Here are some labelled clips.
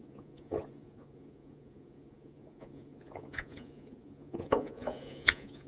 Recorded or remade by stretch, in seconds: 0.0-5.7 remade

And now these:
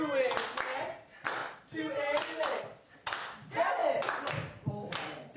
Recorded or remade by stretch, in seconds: 0.0-5.4 recorded

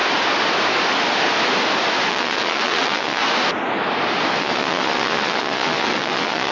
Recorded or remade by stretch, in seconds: 0.0-2.1 recorded; 2.1-3.2 remade; 3.2-4.4 recorded; 4.4-6.5 remade